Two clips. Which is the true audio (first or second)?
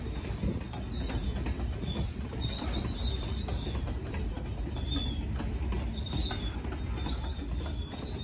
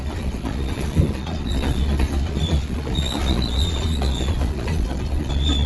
first